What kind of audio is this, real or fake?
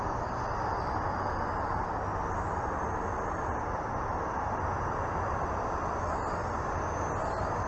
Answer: real